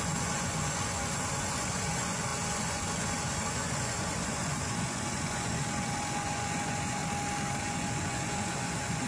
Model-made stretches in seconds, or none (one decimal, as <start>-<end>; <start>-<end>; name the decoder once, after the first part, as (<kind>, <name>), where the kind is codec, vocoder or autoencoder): 0.0-7.0 (vocoder, Vocos); 7.6-9.1